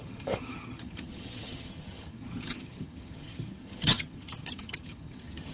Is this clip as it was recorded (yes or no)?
no